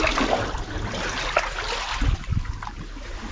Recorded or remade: recorded